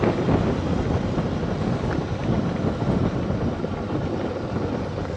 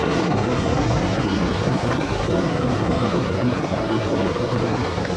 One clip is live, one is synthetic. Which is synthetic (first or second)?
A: second